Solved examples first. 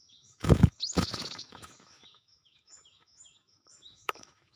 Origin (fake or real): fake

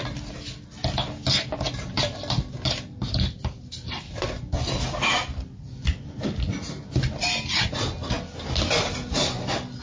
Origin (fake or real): real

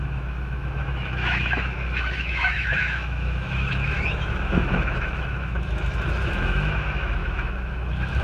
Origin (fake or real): fake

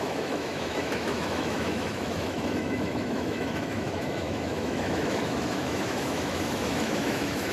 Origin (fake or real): fake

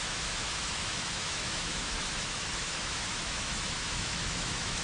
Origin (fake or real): fake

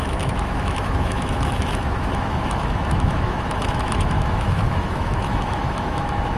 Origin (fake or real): fake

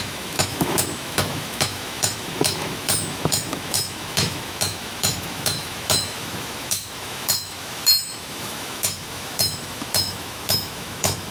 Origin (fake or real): fake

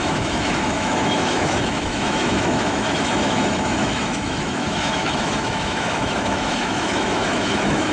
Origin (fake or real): fake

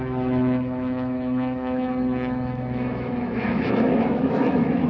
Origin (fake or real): fake